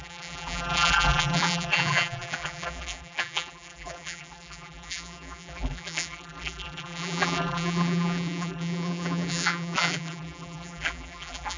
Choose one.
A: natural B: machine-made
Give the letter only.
B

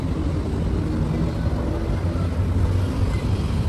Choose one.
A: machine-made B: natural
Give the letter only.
B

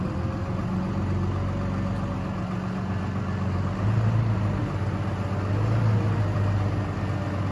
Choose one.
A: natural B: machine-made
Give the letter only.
A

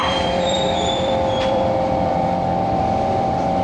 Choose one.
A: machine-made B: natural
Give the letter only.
A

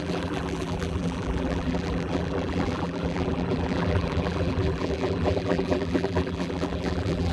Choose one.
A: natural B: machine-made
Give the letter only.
B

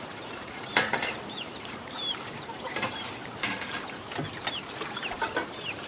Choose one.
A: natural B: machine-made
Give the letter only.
B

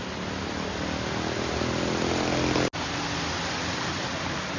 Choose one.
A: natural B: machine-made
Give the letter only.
A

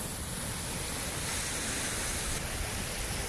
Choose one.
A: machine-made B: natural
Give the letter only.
B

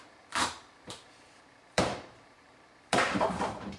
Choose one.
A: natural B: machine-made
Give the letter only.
B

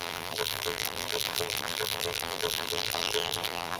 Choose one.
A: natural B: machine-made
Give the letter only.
B